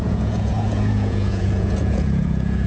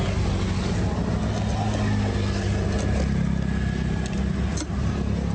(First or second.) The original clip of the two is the second